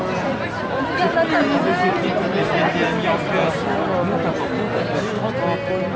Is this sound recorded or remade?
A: recorded